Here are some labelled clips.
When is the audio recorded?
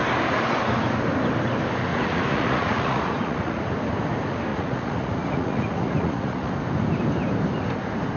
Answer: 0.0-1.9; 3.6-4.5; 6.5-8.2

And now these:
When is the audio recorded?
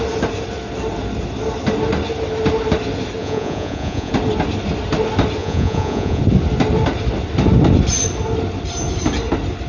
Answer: 0.0-3.2; 4.1-5.4; 6.2-9.7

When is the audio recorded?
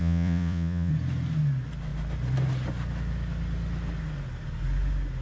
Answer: 0.9-5.2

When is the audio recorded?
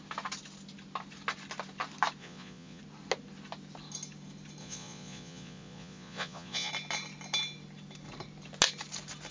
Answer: 0.0-2.2; 2.8-4.6; 6.7-9.3